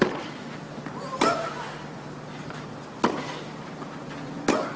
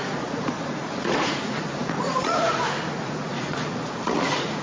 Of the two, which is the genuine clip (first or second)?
first